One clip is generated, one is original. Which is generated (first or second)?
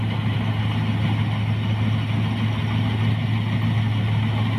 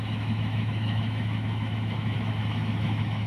second